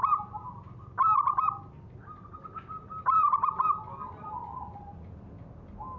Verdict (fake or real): real